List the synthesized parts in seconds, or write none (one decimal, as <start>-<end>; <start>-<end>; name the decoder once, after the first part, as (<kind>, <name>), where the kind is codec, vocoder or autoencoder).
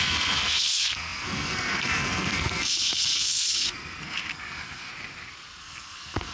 0.0-4.9 (codec, SNAC); 5.6-6.3